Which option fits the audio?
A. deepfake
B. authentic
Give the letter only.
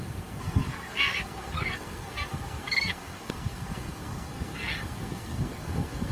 A